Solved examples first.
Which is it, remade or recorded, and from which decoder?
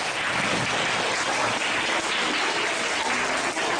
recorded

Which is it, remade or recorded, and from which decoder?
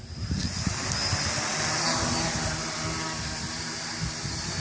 recorded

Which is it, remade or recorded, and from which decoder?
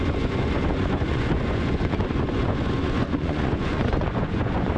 remade, vocoder, Vocos